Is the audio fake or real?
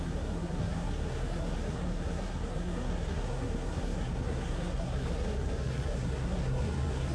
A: fake